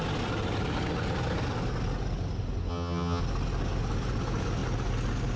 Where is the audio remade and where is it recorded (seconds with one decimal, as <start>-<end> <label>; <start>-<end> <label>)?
0.0-2.7 recorded; 2.7-3.2 remade; 3.2-5.4 recorded